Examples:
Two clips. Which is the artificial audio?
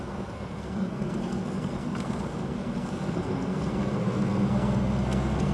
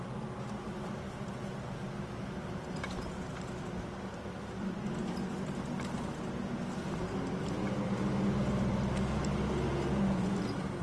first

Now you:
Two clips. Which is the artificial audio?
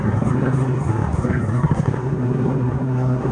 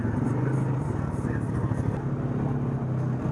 first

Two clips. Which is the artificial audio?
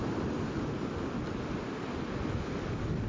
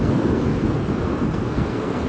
second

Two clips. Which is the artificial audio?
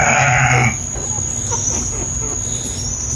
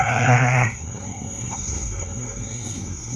second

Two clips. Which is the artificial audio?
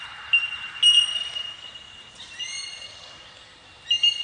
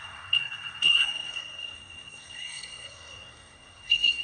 second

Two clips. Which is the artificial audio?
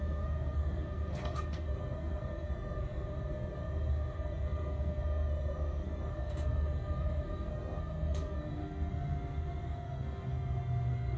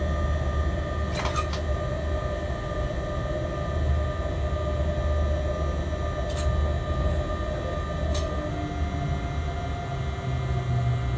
first